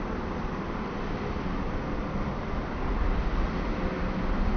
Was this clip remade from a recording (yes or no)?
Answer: no